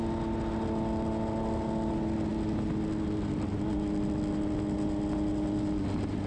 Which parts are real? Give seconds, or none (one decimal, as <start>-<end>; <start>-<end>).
0.0-6.3